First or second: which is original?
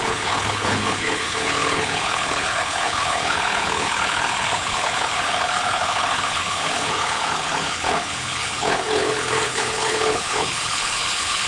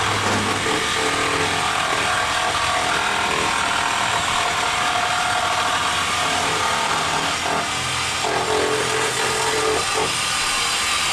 second